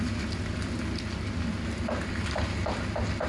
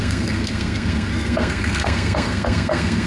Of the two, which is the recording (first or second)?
first